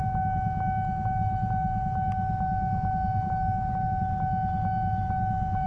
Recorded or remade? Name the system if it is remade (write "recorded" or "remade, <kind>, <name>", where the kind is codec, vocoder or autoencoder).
recorded